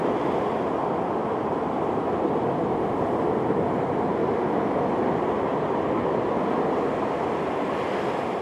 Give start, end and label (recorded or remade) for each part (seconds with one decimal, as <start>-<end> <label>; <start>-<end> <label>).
0.0-8.4 recorded